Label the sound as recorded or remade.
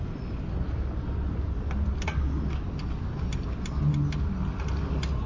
recorded